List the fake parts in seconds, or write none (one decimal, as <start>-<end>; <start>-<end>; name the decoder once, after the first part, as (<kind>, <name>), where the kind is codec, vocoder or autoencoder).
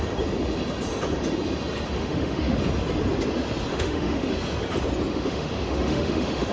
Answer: 2.0-2.6 (autoencoder, DAC-VAE); 3.7-4.3; 5.1-6.5